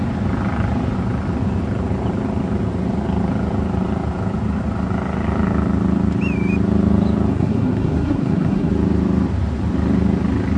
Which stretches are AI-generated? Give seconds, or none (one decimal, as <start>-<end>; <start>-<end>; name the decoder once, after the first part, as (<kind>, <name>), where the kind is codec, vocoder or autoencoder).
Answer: 7.3-8.7 (codec, SNAC)